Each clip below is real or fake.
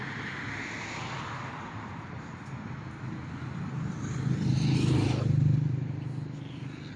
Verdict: real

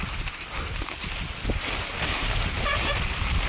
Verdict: real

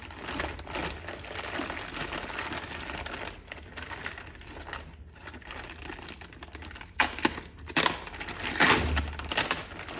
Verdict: real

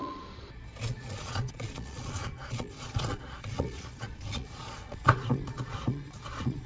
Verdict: fake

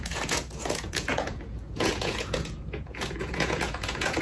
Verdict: fake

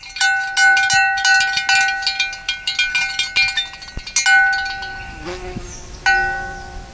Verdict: real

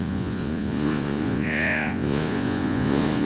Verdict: fake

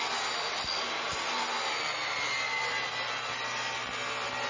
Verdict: real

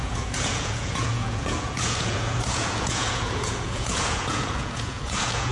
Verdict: fake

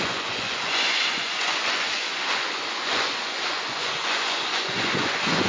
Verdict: fake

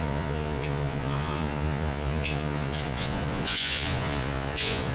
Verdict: fake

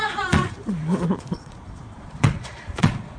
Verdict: fake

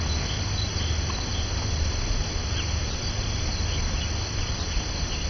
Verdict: real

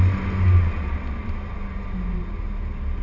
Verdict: real